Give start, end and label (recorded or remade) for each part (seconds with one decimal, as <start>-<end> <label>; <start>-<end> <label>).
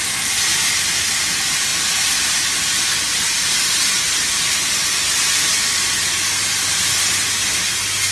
0.0-8.1 recorded